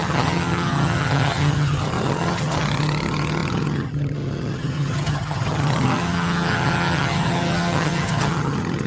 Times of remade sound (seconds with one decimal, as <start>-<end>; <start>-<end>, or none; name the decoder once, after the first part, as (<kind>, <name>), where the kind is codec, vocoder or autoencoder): 0.0-8.9 (vocoder, HiFi-GAN)